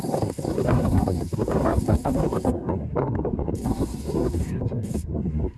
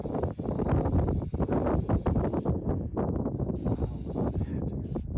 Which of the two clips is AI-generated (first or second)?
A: first